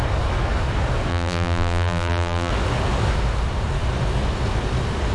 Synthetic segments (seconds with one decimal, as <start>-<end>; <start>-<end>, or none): 1.1-2.5